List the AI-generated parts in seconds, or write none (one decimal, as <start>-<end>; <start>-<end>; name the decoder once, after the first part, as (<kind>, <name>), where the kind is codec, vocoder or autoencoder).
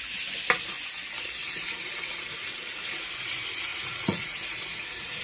1.4-3.0 (vocoder, Vocos); 3.7-5.2